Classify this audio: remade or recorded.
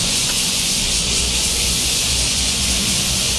remade